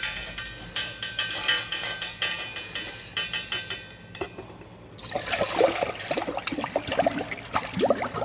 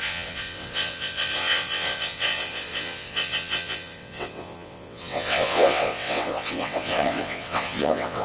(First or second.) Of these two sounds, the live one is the first